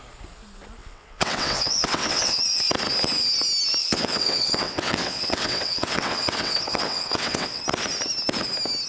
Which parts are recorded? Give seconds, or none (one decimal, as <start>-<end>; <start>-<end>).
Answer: 0.0-0.8; 2.4-3.8; 7.6-8.9